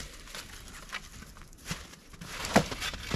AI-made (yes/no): no